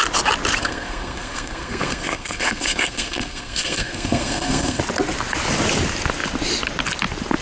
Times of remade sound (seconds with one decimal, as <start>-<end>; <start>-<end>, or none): 0.6-4.8